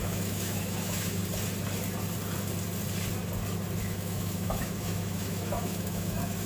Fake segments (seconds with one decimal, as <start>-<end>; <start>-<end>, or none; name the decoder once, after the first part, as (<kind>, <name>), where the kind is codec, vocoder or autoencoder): 0.0-1.2 (autoencoder, DAC-VAE); 3.8-6.5

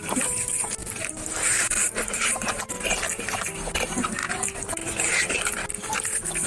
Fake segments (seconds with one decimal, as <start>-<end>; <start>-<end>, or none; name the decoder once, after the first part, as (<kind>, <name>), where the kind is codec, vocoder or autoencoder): 0.8-2.6 (vocoder, BigVGAN v2)